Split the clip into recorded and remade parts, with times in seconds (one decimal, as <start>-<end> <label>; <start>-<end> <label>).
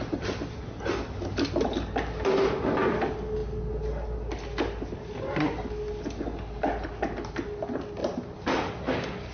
0.0-9.3 recorded